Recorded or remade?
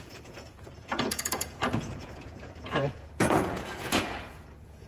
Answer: remade